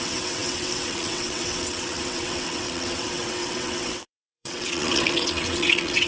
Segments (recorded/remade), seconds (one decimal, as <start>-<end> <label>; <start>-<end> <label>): 0.0-6.1 remade